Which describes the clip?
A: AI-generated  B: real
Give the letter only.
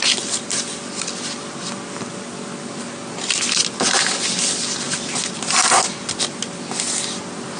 B